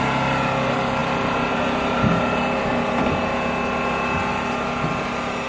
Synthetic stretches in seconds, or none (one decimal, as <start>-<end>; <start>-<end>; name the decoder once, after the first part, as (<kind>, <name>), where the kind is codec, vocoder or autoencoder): none